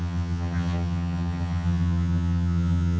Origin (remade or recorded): remade